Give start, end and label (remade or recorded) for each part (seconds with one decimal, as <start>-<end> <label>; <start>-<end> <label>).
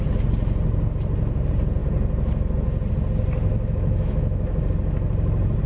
0.0-3.5 recorded; 3.5-4.6 remade; 4.6-5.7 recorded